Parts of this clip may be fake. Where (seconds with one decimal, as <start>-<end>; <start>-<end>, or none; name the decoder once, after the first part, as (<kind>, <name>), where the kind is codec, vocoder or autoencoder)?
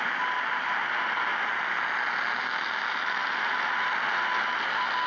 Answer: none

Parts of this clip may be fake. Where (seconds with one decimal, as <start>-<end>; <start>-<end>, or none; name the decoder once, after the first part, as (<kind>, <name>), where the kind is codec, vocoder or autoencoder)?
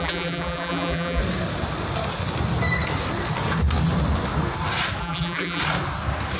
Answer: 0.0-1.2 (vocoder, BigVGAN v2); 5.0-5.6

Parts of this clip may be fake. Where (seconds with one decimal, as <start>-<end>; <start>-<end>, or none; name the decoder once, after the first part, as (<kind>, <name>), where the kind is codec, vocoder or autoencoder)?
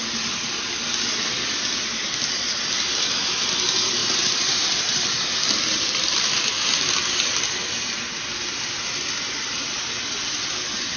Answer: 4.0-5.5 (vocoder, BigVGAN v2)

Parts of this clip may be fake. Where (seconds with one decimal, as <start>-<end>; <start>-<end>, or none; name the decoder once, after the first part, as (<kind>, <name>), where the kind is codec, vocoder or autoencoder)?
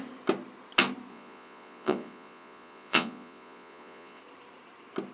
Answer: 1.1-4.2 (vocoder, Vocos)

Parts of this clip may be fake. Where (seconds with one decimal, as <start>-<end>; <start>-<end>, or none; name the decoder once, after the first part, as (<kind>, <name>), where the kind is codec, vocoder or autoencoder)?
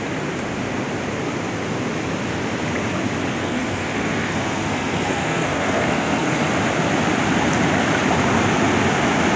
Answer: 3.4-6.4 (codec, SNAC)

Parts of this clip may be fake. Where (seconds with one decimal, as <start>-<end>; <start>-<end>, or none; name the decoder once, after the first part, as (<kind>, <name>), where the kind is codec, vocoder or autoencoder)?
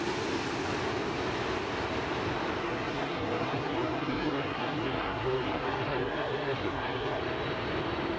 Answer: 2.6-7.2 (codec, SNAC)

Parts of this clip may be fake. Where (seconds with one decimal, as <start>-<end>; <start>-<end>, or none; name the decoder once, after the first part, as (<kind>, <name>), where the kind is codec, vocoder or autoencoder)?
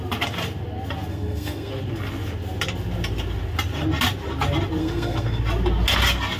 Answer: 1.1-1.7 (codec, SNAC); 4.8-5.4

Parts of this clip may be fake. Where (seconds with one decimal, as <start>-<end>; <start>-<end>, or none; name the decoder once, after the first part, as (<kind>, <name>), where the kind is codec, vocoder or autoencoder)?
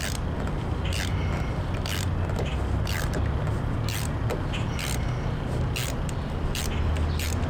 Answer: none